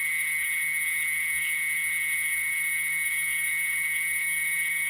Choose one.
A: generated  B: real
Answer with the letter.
A